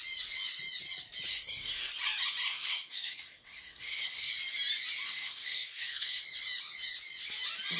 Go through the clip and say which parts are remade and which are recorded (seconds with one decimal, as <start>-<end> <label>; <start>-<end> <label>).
0.0-1.3 recorded; 1.3-1.9 remade; 1.9-2.5 recorded; 2.5-4.3 remade; 4.3-5.1 recorded; 5.1-6.2 remade; 6.2-7.8 recorded